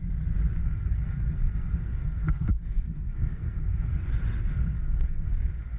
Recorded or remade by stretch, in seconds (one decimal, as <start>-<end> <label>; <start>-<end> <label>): 0.0-0.6 recorded; 0.6-4.1 remade; 4.1-4.5 recorded; 4.5-5.8 remade